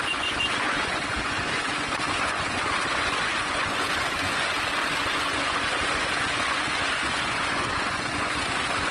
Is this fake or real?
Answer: fake